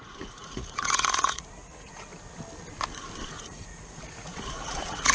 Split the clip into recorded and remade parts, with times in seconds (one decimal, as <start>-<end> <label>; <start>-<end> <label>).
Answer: 0.0-2.1 remade; 2.1-3.3 recorded; 3.3-5.1 remade